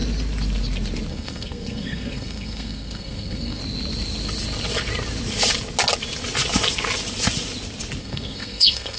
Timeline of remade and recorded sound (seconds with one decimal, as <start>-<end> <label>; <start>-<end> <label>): 0.0-1.1 recorded; 1.1-3.6 remade; 3.6-8.0 recorded; 8.0-9.0 remade